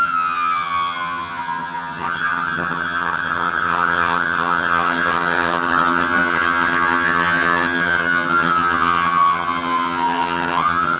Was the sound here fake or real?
fake